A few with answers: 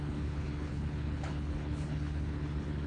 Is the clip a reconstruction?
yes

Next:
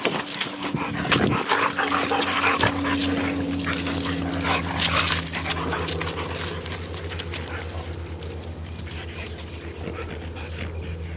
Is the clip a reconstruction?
no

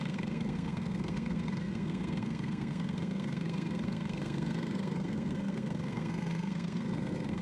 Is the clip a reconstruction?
yes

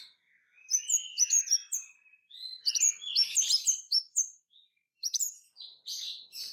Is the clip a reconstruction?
yes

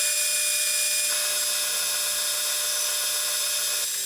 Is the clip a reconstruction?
no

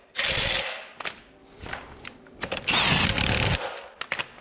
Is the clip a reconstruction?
no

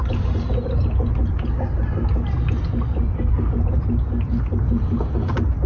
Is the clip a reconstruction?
no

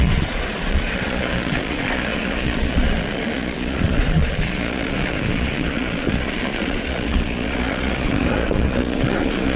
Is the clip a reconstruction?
yes